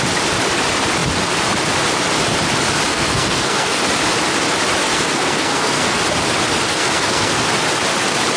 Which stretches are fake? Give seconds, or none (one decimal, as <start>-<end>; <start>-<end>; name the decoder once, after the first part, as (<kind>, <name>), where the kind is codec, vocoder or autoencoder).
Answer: 2.9-3.8 (codec, SNAC); 4.8-6.0; 6.7-7.4